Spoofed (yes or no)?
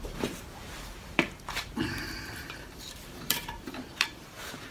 yes